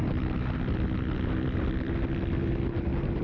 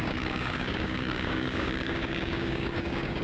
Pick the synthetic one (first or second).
second